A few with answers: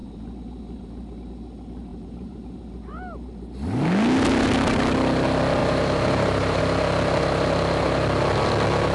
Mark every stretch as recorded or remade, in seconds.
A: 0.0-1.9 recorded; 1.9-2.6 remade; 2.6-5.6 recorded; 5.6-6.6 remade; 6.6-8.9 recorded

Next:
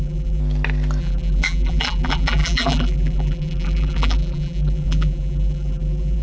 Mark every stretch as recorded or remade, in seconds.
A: 0.0-0.4 remade; 0.4-1.0 recorded; 1.0-6.2 remade

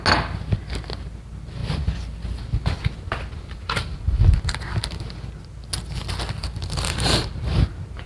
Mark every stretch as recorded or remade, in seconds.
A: 0.0-6.5 recorded; 6.5-8.1 remade

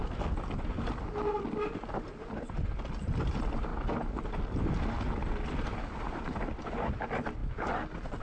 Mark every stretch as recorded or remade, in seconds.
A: 0.0-8.2 recorded

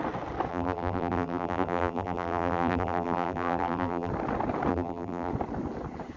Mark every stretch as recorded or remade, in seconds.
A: 0.0-0.5 recorded; 0.5-4.1 remade; 4.1-4.7 recorded; 4.7-5.3 remade; 5.3-6.2 recorded

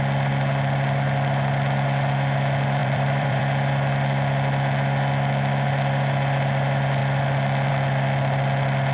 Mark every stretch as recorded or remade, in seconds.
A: 0.0-2.8 recorded; 2.8-3.4 remade; 3.4-8.9 recorded

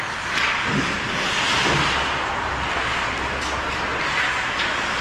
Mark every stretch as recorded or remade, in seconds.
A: 0.0-5.0 recorded